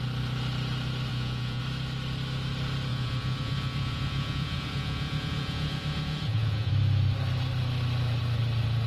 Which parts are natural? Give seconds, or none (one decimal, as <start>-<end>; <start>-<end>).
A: 0.0-1.1; 1.6-2.9; 6.7-8.9